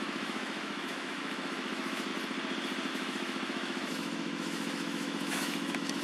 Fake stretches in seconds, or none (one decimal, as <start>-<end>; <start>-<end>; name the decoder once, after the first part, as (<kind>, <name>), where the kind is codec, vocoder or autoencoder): 0.0-2.1 (autoencoder, DAC-VAE); 2.9-6.0